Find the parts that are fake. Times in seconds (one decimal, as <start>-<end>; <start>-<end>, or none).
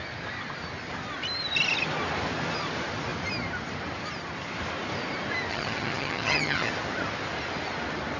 5.5-6.7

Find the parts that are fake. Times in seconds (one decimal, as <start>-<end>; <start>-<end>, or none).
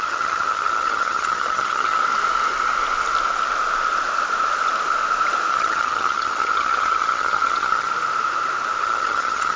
0.0-2.0; 5.5-7.9; 8.8-9.6